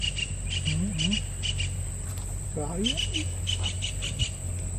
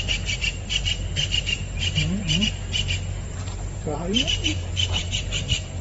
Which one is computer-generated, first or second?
second